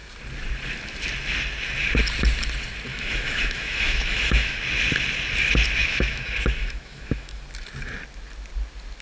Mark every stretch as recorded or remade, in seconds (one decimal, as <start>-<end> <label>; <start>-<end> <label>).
0.0-2.9 recorded; 2.9-4.6 remade; 4.6-5.8 recorded; 5.8-7.4 remade; 7.4-9.0 recorded